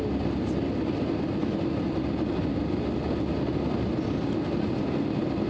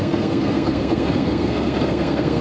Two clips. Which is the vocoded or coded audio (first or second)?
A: second